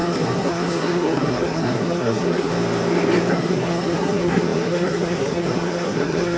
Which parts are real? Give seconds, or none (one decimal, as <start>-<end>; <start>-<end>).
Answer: 2.5-3.3